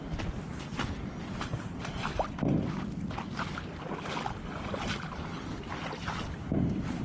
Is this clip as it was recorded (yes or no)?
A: yes